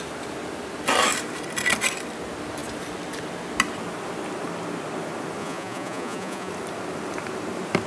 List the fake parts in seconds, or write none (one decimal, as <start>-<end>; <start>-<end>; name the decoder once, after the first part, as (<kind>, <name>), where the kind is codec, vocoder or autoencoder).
5.4-6.5 (vocoder, Vocos)